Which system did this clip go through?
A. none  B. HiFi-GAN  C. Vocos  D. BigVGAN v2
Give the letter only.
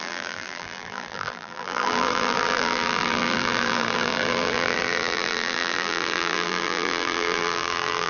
D